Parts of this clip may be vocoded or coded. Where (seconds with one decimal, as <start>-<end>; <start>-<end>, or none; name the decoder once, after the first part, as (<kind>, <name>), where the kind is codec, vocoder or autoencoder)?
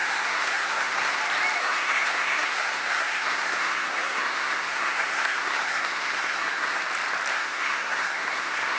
0.0-1.2 (codec, SNAC); 1.6-6.8; 7.3-8.8